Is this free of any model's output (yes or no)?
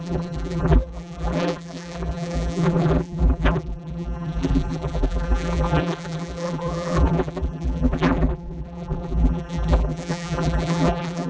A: no